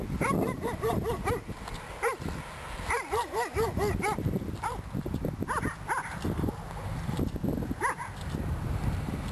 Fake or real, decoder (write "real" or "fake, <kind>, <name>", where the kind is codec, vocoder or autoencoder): real